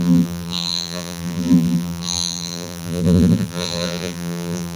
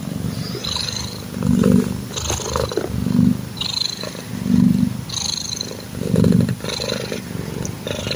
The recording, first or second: second